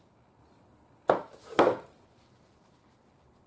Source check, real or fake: real